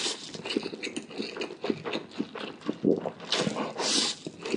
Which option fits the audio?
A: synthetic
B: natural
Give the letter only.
B